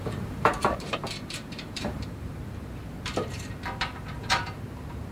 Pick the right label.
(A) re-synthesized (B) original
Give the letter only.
A